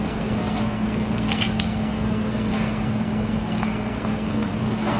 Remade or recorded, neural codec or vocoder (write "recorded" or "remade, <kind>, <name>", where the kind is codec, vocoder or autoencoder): remade, codec, SNAC